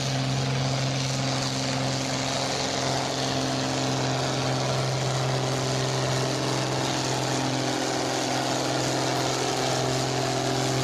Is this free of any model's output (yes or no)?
yes